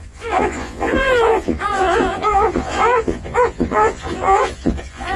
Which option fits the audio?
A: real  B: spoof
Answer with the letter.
B